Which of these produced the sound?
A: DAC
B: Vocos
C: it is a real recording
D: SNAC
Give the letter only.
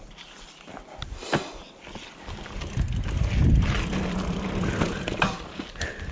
C